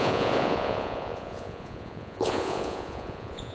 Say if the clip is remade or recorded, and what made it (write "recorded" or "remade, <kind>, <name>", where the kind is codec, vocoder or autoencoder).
remade, vocoder, Vocos